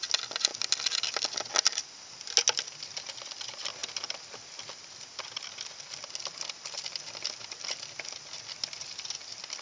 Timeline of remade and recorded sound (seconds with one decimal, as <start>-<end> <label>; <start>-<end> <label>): 0.0-9.6 recorded